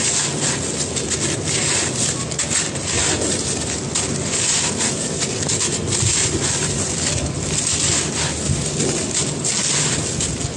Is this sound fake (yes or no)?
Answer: no